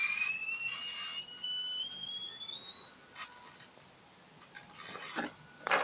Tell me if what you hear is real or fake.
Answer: real